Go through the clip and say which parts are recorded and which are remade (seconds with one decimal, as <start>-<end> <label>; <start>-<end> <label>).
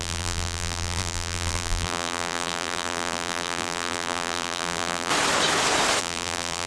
0.0-5.1 remade; 5.1-6.0 recorded; 6.0-6.7 remade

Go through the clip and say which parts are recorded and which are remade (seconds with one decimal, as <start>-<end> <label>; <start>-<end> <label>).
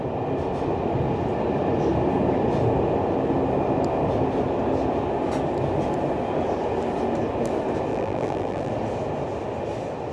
0.0-7.9 recorded; 7.9-8.7 remade; 8.7-10.1 recorded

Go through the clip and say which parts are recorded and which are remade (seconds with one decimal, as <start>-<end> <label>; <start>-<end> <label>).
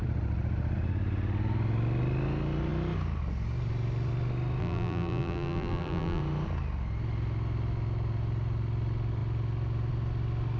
0.0-4.6 recorded; 4.6-6.2 remade; 6.2-10.6 recorded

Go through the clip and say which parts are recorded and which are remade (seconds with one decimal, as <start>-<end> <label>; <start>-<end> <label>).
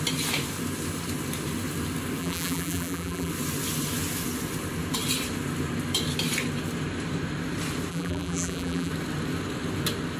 0.0-2.2 recorded; 2.2-3.3 remade; 3.3-7.9 recorded; 7.9-8.9 remade; 8.9-10.2 recorded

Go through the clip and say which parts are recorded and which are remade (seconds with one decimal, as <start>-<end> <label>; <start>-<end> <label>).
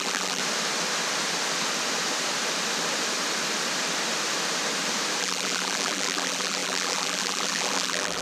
0.0-0.4 remade; 0.4-5.2 recorded; 5.2-8.2 remade